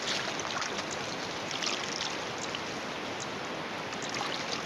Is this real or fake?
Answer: real